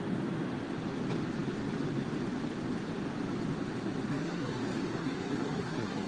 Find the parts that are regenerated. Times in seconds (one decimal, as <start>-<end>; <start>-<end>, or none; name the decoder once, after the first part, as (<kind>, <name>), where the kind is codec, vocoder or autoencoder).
4.1-4.6 (codec, SNAC); 5.0-6.1